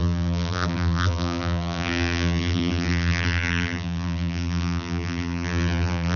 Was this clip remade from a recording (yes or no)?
yes